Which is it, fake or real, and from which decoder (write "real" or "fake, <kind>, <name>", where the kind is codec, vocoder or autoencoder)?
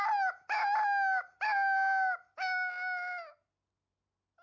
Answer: real